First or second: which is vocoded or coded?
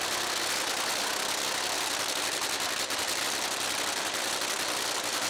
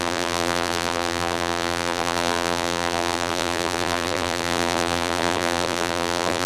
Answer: second